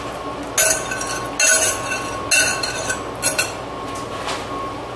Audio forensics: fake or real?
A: real